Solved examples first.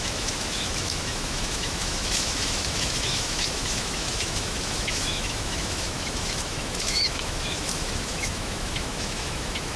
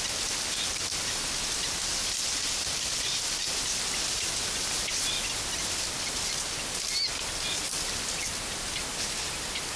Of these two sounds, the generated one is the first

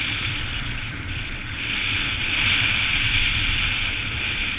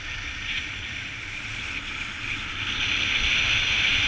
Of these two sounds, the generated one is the first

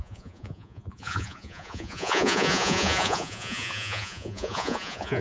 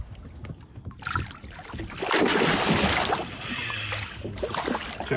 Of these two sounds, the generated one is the first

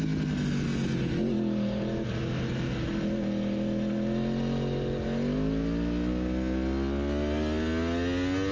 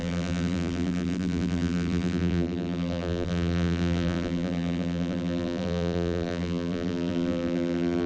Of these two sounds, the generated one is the second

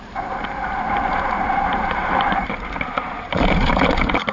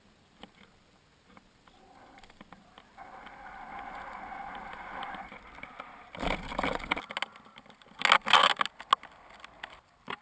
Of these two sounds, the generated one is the first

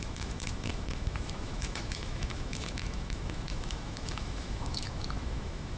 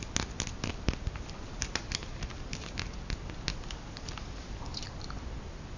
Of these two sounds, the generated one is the first